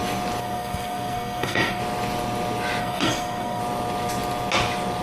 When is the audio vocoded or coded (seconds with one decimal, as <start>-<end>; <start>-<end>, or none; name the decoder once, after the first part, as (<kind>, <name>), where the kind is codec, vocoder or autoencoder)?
0.4-1.8 (codec, SNAC); 2.8-3.6